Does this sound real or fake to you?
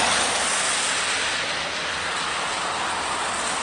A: real